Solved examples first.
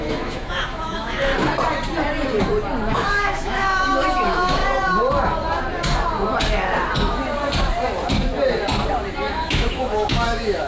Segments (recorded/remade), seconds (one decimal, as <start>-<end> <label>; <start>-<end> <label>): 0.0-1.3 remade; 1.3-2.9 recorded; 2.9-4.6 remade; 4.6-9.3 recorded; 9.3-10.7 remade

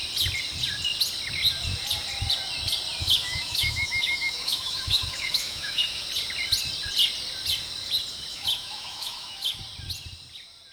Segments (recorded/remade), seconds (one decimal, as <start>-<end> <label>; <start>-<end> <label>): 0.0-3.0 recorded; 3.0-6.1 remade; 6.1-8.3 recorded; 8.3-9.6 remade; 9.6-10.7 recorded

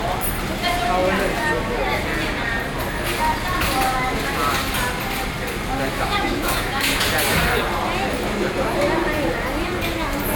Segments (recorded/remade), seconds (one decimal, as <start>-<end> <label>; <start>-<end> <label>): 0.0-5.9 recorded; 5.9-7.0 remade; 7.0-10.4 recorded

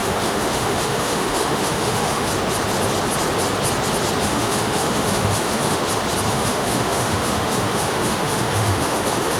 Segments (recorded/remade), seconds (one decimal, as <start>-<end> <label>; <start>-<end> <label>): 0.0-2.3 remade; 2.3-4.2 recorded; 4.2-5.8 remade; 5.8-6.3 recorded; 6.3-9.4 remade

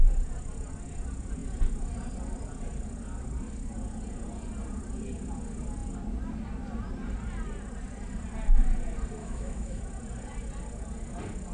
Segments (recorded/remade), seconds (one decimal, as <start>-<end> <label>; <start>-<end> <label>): 0.0-9.2 recorded; 9.2-9.8 remade; 9.8-11.5 recorded

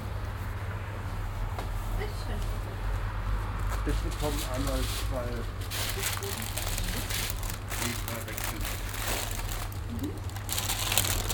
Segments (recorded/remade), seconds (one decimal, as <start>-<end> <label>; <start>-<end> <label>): 0.0-11.3 recorded